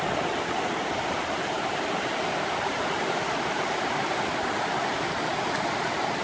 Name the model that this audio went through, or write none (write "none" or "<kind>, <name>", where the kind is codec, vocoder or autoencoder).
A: none